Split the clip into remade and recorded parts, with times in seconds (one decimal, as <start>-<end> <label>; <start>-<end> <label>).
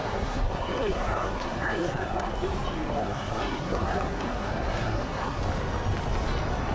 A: 0.0-2.3 remade; 2.3-3.0 recorded; 3.0-5.4 remade; 5.4-6.7 recorded